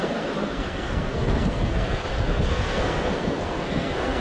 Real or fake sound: fake